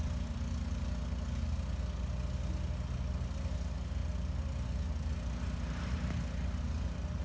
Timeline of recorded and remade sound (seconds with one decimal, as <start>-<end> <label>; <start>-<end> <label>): 0.0-7.2 recorded